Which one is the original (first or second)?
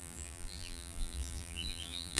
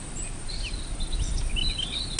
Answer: second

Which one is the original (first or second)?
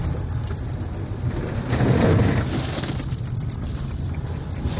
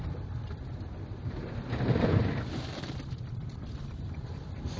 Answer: first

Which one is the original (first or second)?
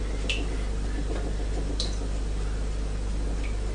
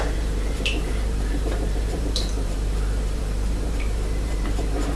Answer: first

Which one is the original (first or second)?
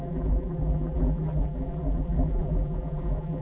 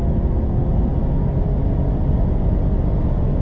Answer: second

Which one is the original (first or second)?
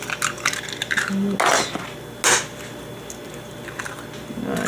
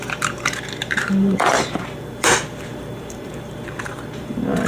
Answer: first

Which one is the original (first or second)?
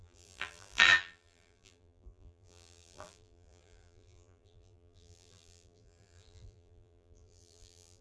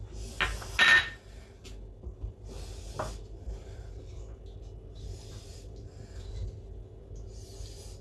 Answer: second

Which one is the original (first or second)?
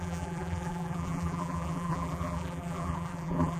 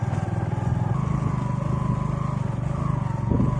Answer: second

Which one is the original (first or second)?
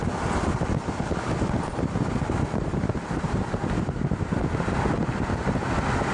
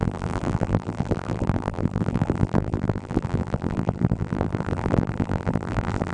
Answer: first